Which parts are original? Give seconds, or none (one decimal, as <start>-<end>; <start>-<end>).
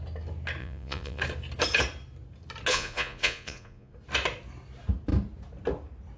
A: 0.0-0.6; 1.2-2.7; 3.9-6.2